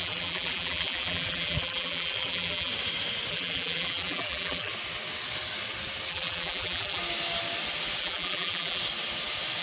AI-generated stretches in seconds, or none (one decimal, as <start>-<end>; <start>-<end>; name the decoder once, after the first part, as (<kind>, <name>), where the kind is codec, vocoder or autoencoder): 0.0-2.7 (vocoder, BigVGAN v2); 3.3-4.7; 6.1-7.0; 8.0-8.8

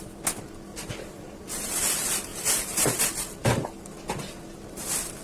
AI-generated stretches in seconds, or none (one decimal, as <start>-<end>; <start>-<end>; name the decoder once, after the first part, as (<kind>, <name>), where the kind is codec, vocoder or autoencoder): 0.7-1.7 (vocoder, BigVGAN v2); 2.3-3.0

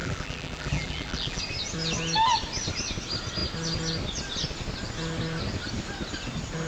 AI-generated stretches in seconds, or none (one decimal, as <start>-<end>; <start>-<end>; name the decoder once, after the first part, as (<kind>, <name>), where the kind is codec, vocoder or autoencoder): 0.0-1.4 (vocoder, BigVGAN v2)

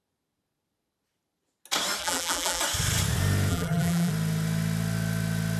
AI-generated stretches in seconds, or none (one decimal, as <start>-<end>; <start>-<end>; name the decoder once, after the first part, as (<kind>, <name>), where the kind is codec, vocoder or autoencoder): 2.0-2.6 (vocoder, BigVGAN v2); 3.5-4.1

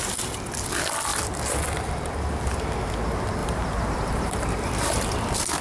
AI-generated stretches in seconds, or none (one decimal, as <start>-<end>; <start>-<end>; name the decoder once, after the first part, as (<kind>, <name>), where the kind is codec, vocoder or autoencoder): 3.4-4.7 (vocoder, BigVGAN v2)